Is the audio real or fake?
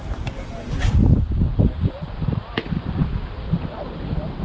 fake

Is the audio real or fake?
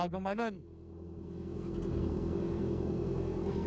fake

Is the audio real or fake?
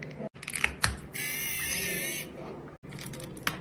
real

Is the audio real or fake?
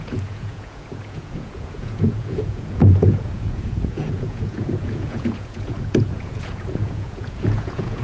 fake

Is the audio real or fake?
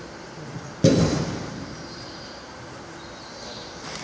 fake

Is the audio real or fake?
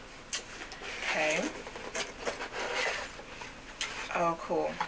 real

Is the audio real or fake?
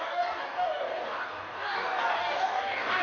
fake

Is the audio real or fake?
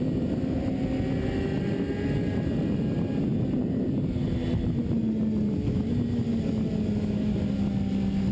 real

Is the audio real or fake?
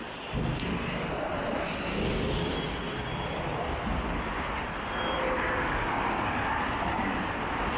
real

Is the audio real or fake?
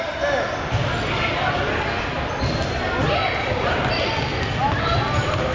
fake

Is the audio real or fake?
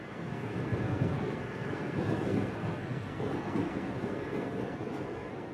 fake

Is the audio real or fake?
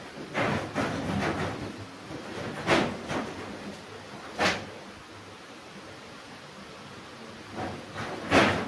real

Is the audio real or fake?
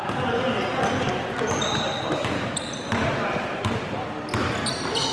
real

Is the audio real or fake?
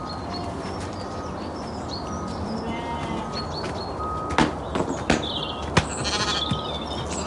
real